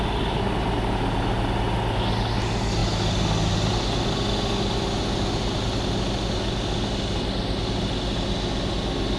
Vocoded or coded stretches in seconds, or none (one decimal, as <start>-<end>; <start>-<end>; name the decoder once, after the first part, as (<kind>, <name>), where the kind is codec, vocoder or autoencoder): none